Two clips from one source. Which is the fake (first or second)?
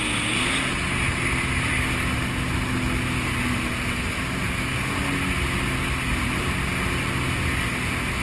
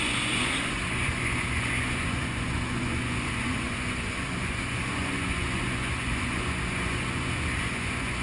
second